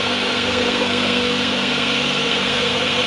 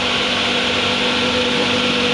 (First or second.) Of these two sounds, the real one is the second